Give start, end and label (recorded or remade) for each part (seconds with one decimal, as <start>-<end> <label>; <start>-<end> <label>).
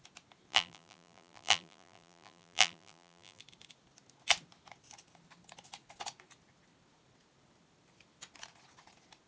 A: 0.0-0.5 recorded; 0.5-3.4 remade; 3.4-9.3 recorded